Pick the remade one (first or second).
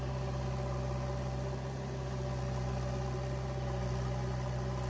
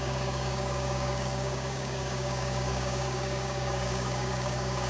second